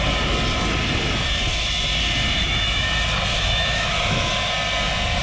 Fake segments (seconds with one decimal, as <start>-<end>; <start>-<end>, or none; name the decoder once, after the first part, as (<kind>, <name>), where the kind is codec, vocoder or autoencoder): 2.4-2.9 (autoencoder, DAC-VAE); 3.3-4.3